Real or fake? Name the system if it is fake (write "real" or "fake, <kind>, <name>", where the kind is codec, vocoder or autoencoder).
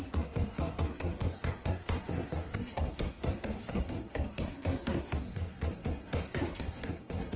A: fake, codec, SNAC